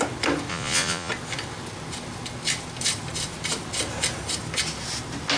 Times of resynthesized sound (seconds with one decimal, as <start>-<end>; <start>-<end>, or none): 0.5-1.1